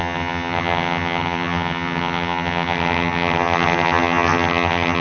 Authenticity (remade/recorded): remade